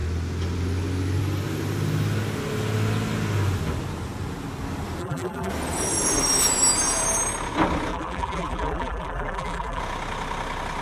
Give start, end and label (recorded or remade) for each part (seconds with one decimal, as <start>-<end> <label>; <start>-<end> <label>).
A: 0.0-5.0 recorded; 5.0-5.5 remade; 5.5-7.9 recorded; 7.9-9.8 remade; 9.8-10.8 recorded